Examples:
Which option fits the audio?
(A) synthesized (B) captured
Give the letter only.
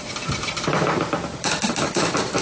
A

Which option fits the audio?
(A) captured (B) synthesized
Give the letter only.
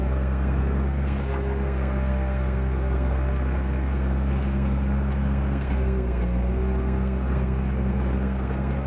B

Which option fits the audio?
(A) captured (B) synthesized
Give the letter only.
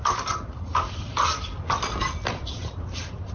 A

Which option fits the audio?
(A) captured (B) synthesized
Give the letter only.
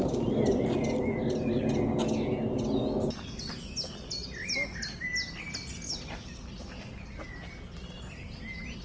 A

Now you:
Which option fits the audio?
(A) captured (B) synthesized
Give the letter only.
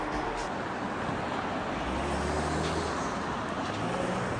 A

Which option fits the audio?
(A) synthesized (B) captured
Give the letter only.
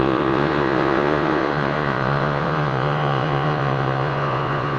A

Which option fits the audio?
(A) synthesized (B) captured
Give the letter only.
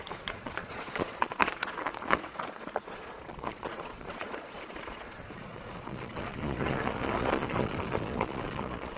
A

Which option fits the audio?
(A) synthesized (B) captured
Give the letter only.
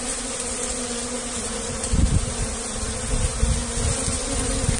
B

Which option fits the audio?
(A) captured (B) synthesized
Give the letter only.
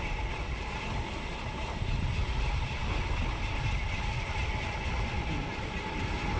A